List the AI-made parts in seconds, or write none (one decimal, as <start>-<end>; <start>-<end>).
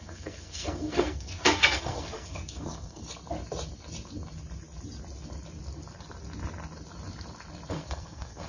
0.0-3.0; 7.7-8.5